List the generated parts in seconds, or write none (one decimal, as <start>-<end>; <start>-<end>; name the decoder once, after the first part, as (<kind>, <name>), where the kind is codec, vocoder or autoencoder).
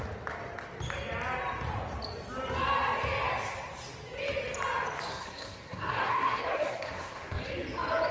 5.1-7.5 (codec, SNAC)